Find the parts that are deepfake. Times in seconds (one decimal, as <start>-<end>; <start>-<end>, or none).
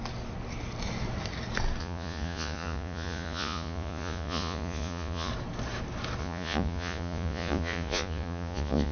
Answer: 1.8-5.3; 6.2-8.9